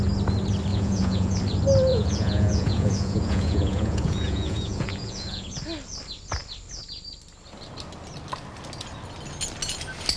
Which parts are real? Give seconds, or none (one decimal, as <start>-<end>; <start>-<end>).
0.0-0.7; 1.4-1.9; 5.6-10.2